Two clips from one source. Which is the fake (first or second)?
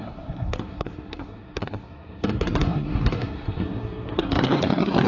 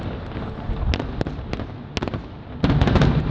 first